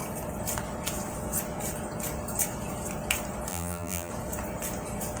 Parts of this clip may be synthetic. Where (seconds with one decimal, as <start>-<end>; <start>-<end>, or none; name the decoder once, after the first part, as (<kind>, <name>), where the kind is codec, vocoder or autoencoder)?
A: 3.5-4.1 (vocoder, BigVGAN v2)